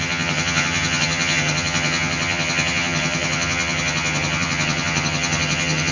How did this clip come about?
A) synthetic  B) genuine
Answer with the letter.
A